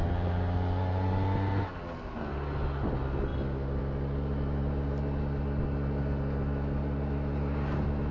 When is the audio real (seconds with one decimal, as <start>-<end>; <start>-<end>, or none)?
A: 0.0-8.1